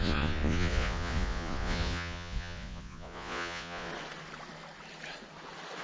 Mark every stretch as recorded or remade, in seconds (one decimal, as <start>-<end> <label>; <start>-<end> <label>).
0.0-3.9 remade; 3.9-5.8 recorded